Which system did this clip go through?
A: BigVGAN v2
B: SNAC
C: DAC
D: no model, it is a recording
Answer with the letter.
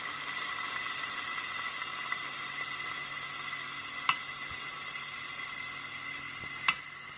D